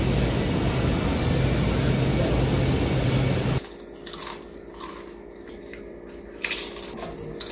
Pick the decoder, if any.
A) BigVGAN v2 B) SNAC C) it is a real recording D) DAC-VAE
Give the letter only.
C